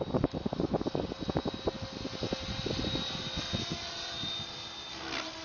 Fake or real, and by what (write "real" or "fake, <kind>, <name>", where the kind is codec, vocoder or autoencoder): real